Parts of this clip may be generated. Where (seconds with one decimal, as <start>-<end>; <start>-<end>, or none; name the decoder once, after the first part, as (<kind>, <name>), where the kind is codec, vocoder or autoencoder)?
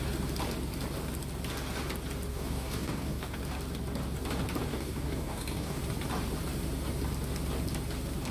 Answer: 2.3-3.4 (codec, DAC); 4.7-5.8